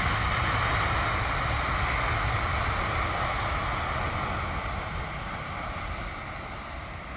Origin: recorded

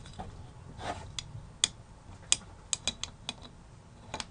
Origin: recorded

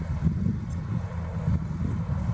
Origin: recorded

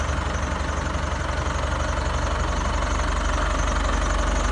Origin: recorded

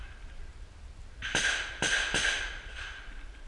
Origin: recorded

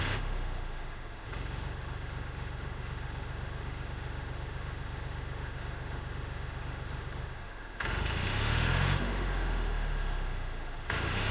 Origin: remade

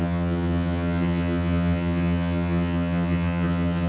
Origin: remade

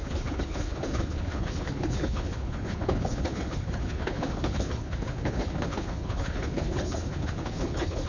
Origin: remade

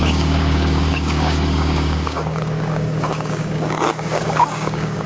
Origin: remade